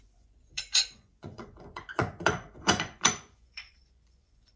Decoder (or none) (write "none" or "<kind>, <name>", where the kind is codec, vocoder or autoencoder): vocoder, Vocos